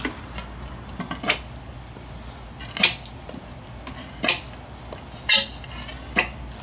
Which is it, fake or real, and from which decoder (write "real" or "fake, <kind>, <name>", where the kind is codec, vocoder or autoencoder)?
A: real